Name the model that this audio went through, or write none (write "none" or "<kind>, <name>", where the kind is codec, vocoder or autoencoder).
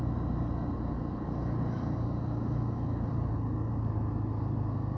none